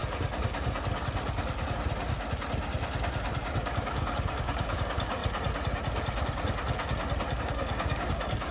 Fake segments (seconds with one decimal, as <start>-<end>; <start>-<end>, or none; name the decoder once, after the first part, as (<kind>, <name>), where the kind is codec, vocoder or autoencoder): 3.7-5.2 (codec, DAC); 7.4-8.5